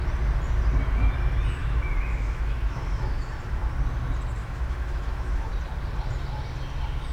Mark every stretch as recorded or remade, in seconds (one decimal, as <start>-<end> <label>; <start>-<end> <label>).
0.0-1.6 recorded; 1.6-3.3 remade; 3.3-4.4 recorded; 4.4-5.5 remade; 5.5-7.1 recorded